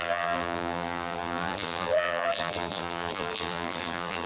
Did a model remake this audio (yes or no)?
yes